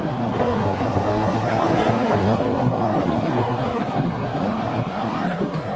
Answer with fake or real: fake